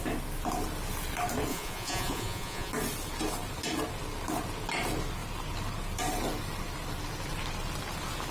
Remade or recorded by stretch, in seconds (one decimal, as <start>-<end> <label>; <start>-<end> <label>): 0.0-1.5 recorded; 1.5-2.7 remade; 2.7-8.3 recorded